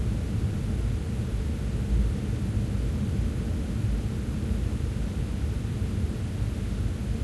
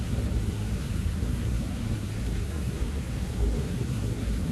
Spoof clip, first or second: second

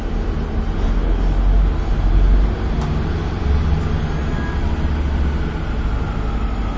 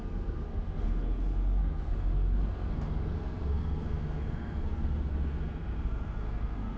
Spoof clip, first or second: second